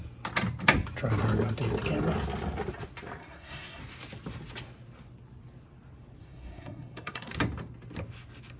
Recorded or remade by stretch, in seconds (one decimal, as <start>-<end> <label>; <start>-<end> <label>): 0.0-3.2 recorded; 3.2-3.8 remade; 3.8-6.2 recorded; 6.2-7.3 remade; 7.3-8.6 recorded